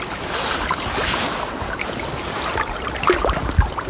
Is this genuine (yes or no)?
yes